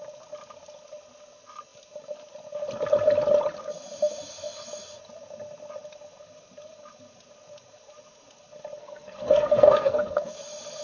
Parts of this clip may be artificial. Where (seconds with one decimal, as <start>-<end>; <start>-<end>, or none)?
8.8-10.3